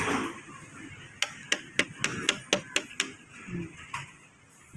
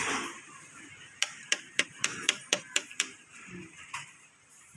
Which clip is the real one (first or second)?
first